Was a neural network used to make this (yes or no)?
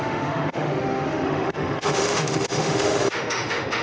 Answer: yes